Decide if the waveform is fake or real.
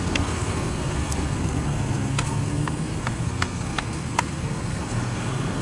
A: fake